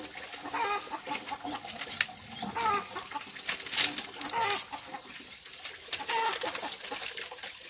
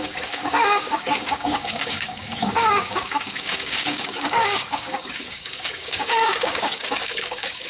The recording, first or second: first